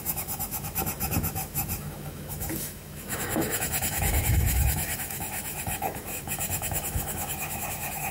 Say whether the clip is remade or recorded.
remade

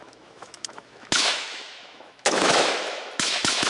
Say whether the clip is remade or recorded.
remade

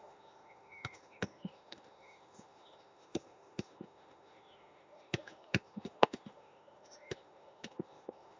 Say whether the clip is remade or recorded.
remade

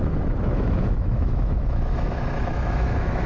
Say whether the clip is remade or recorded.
remade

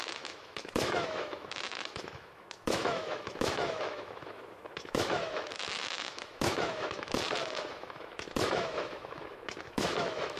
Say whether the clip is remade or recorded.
remade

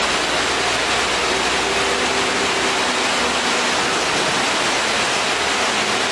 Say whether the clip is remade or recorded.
recorded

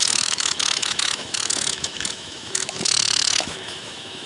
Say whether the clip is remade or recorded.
remade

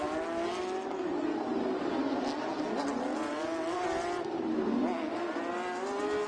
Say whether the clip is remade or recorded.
recorded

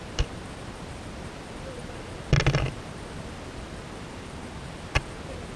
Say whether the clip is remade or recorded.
recorded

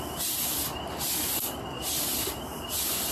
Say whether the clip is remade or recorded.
recorded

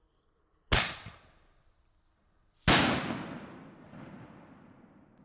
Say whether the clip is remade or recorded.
recorded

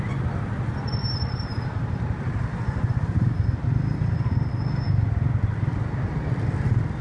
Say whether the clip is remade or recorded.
recorded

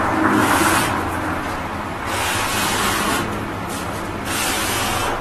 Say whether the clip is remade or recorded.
recorded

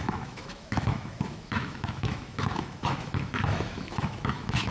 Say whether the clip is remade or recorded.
remade